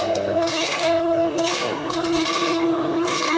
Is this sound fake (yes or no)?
yes